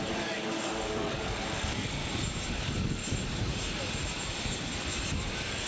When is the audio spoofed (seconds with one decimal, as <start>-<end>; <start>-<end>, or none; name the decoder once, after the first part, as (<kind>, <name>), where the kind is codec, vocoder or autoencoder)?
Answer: 0.0-2.0 (codec, DAC); 2.5-3.0; 5.2-5.7